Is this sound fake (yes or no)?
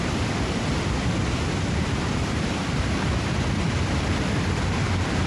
yes